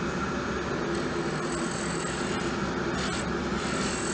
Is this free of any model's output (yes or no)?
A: yes